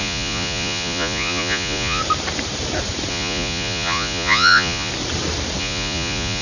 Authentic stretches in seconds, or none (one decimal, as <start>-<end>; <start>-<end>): 2.0-3.1; 4.9-5.6